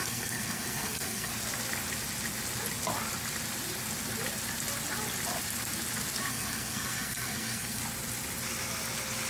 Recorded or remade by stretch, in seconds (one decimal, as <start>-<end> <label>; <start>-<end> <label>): 0.0-1.3 remade; 1.3-6.3 recorded; 6.3-7.8 remade; 7.8-9.3 recorded